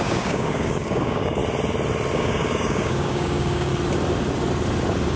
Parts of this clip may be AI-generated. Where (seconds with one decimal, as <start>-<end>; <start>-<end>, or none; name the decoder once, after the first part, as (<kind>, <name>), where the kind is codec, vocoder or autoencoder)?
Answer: 0.0-1.4 (codec, DAC); 2.1-3.7